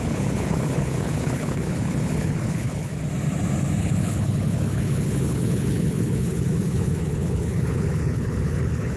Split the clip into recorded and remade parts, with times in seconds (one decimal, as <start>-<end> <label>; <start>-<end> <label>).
0.0-2.9 remade; 2.9-3.8 recorded; 3.8-9.0 remade